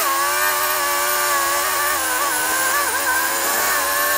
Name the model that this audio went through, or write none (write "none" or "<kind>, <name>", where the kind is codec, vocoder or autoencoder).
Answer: none